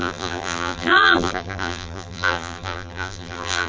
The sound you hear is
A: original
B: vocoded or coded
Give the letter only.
B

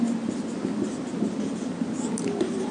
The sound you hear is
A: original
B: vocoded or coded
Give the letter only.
A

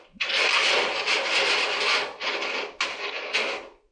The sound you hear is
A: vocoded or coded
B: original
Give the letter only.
B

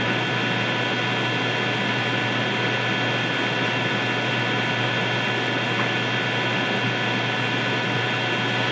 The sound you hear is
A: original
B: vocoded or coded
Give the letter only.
A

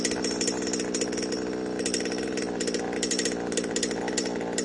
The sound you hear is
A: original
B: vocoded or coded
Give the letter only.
A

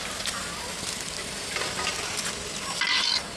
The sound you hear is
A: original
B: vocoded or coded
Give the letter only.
A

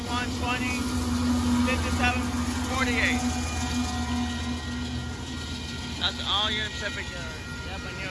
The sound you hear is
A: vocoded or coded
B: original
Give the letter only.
B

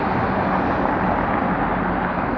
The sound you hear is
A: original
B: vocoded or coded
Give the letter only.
A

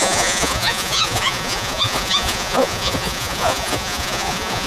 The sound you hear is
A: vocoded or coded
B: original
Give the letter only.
A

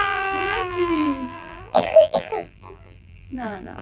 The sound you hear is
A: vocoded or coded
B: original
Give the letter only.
A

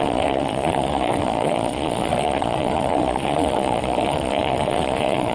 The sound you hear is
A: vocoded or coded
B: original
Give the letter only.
A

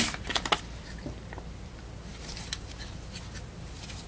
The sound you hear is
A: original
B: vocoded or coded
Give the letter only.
A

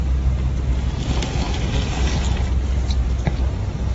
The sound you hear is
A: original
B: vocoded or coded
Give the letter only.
A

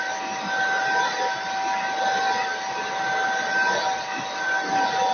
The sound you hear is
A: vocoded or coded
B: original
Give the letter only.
B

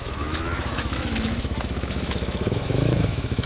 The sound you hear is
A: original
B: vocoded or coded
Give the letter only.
B